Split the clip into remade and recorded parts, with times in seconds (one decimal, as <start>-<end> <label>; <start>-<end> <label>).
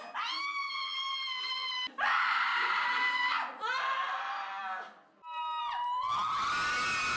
0.0-7.2 recorded